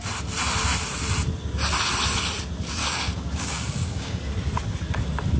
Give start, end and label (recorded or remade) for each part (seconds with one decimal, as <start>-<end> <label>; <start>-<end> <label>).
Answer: 0.0-2.8 recorded; 2.8-4.2 remade; 4.2-5.4 recorded